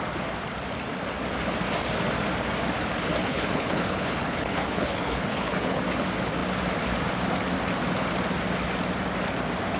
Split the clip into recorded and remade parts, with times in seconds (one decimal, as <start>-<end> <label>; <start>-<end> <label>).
0.0-3.2 recorded; 3.2-5.8 remade; 5.8-9.8 recorded